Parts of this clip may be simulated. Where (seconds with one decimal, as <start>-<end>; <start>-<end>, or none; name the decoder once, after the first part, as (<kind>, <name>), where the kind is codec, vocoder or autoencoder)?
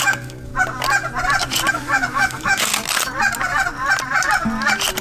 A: 0.0-0.5 (codec, DAC); 1.7-2.7